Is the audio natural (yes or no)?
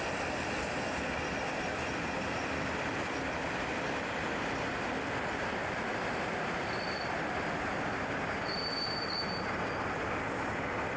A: yes